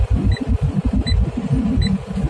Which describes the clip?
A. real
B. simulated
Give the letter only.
A